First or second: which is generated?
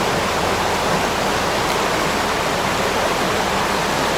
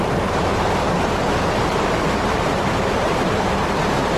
second